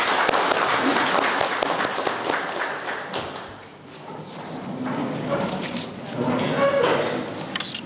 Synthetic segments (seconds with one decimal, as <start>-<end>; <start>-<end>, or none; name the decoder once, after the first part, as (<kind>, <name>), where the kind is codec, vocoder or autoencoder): none